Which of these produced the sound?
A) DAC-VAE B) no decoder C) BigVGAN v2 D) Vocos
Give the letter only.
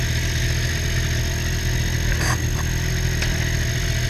B